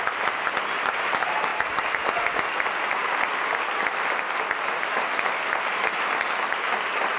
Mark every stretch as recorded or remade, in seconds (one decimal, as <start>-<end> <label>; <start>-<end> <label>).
0.0-7.2 recorded